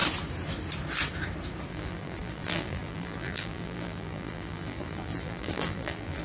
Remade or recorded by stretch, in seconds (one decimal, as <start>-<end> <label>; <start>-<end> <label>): 0.0-1.7 recorded; 1.7-6.2 remade